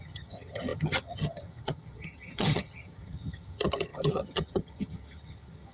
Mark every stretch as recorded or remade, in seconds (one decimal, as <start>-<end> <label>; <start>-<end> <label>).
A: 0.0-5.7 remade